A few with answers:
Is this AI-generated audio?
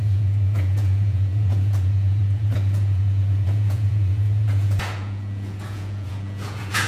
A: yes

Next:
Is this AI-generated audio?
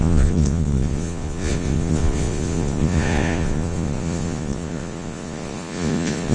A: yes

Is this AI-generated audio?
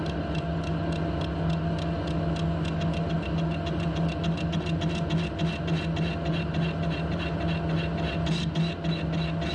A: no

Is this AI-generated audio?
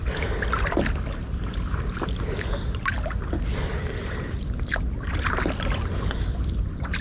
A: no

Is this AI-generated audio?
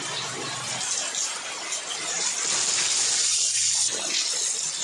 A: no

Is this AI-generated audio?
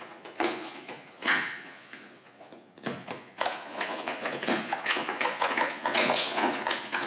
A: yes